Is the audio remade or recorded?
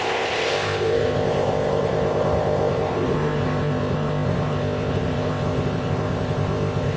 remade